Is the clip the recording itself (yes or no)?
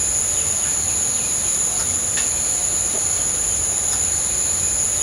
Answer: yes